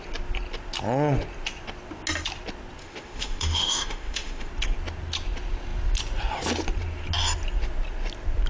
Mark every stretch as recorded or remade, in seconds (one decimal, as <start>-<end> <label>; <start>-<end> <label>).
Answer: 0.0-2.8 recorded; 2.8-4.5 remade; 4.5-8.5 recorded